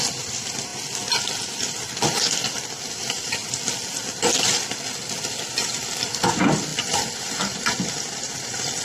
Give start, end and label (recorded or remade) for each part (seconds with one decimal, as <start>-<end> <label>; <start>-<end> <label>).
0.0-0.7 remade; 0.7-2.2 recorded; 2.2-3.4 remade; 3.4-5.7 recorded; 5.7-8.8 remade